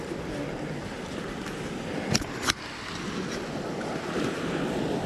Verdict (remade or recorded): recorded